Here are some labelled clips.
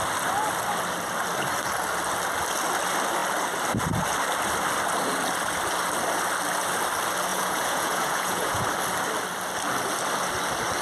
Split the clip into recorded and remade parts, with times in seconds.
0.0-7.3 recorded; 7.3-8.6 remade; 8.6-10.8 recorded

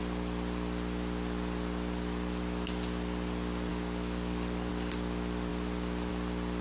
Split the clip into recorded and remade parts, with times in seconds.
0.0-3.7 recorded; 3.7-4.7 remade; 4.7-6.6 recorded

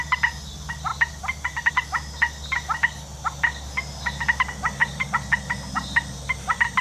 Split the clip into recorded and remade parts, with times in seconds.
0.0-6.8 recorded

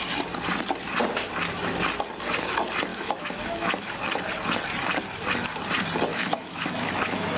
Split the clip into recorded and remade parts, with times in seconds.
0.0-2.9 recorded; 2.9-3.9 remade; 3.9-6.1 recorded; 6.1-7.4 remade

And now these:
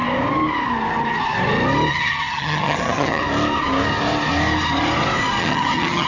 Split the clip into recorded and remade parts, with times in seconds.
0.0-1.9 recorded; 1.9-3.2 remade; 3.2-5.4 recorded; 5.4-6.1 remade

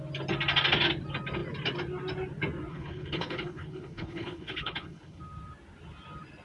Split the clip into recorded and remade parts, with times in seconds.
0.0-2.7 recorded; 2.7-5.2 remade; 5.2-6.4 recorded

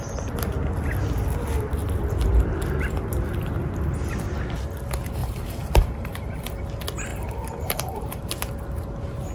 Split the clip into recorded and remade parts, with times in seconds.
0.0-5.2 recorded; 5.2-6.6 remade; 6.6-7.1 recorded; 7.1-8.2 remade; 8.2-9.3 recorded